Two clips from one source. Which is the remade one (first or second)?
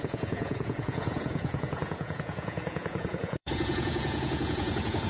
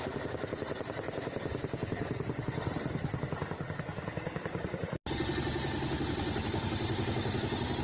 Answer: first